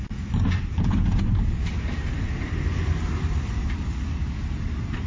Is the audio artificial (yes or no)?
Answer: no